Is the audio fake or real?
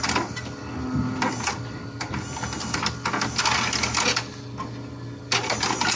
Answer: real